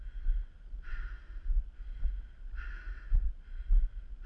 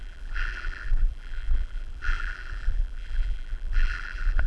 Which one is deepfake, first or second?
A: second